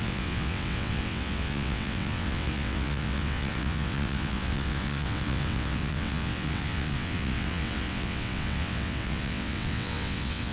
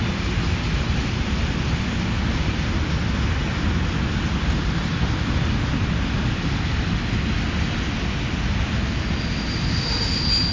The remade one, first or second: first